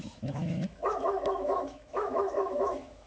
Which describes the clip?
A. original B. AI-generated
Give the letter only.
B